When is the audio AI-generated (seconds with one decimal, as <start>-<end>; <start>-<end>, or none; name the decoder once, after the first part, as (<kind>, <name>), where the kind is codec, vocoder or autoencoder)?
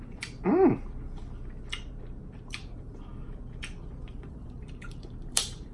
0.0-0.5 (vocoder, BigVGAN v2); 2.4-3.1; 4.1-5.7